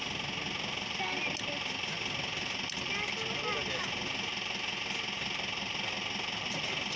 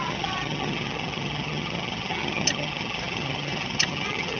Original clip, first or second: first